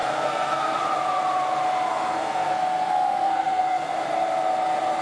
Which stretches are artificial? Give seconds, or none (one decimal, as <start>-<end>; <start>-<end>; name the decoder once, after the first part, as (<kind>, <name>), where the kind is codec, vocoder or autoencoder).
0.0-0.8 (codec, SNAC); 1.9-3.9